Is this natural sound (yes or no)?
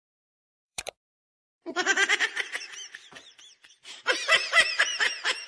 no